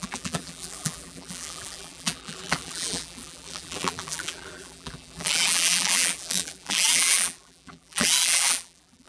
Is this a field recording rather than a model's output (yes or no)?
no